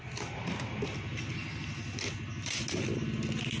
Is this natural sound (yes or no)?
yes